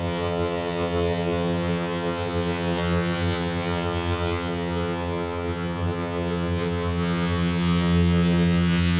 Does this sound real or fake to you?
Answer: fake